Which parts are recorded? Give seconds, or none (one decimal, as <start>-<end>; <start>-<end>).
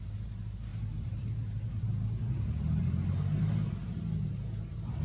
0.0-0.7; 3.4-5.0